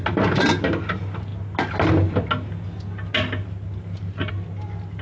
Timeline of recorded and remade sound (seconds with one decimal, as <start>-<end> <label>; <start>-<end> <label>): 0.0-5.0 recorded